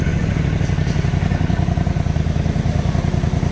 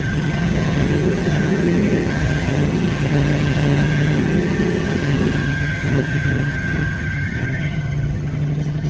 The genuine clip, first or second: first